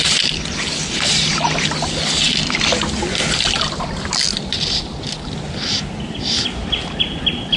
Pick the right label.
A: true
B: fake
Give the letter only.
A